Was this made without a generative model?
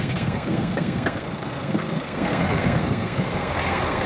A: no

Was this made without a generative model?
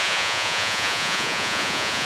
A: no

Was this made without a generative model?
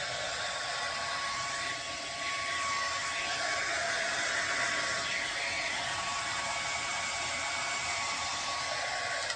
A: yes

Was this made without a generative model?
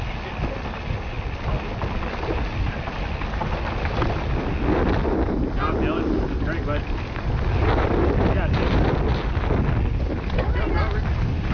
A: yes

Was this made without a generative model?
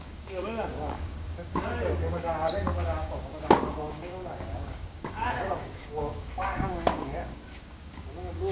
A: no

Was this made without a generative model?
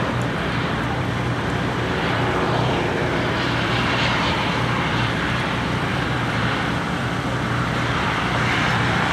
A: no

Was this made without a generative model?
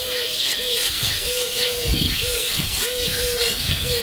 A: no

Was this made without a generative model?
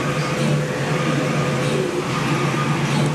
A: yes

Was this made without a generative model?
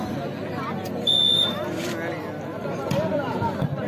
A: yes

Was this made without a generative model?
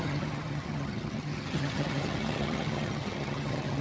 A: no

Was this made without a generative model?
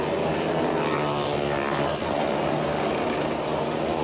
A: yes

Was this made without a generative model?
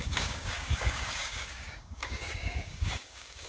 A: no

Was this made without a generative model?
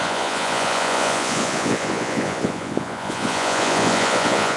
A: no